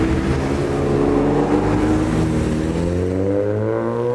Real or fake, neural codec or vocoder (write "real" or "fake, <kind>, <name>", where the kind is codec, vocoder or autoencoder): real